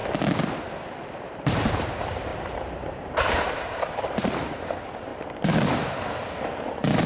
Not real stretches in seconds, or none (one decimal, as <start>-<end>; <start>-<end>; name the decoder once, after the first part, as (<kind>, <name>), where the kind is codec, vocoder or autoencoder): 0.6-5.1 (vocoder, BigVGAN v2); 6.4-7.1